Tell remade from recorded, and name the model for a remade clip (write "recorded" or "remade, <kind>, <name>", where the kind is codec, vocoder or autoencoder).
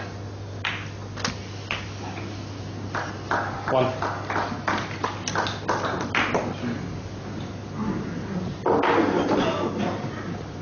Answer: recorded